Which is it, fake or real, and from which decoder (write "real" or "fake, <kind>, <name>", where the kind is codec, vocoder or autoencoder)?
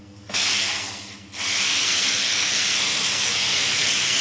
fake, codec, SNAC